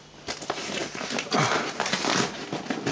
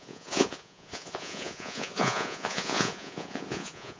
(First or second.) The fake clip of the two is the second